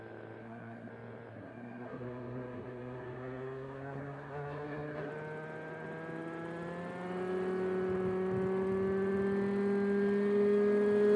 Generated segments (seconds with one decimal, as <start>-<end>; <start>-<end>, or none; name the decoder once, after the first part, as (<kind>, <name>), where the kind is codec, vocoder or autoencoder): 0.4-0.9 (codec, SNAC); 1.3-5.1